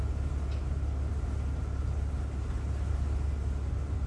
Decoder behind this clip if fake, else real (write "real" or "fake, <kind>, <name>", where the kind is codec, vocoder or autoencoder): real